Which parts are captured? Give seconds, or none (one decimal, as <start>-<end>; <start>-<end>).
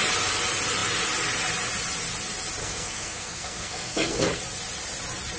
0.0-2.6; 4.4-5.4